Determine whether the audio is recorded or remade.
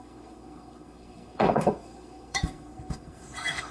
remade